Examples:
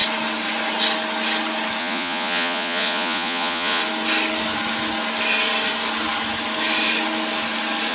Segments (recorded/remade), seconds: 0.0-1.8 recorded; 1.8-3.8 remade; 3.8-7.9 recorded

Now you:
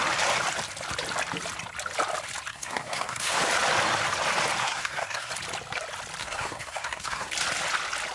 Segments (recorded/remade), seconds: 0.0-2.5 recorded; 2.5-3.4 remade; 3.4-4.6 recorded; 4.6-5.3 remade; 5.3-6.2 recorded; 6.2-7.3 remade; 7.3-8.1 recorded

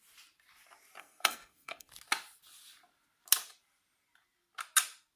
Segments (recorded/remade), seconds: 0.0-1.0 recorded; 1.0-1.9 remade; 1.9-5.2 recorded

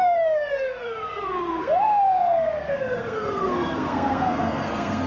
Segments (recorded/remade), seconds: 0.0-5.1 remade